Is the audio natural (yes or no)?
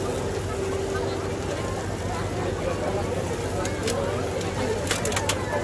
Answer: yes